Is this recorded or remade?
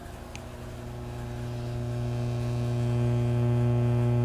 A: recorded